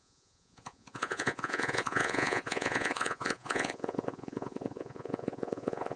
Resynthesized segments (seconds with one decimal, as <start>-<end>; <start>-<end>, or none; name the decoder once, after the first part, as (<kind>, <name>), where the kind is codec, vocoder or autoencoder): 0.0-6.0 (vocoder, Vocos)